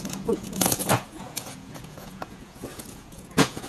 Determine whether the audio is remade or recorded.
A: remade